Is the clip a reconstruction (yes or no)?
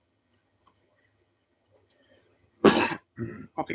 yes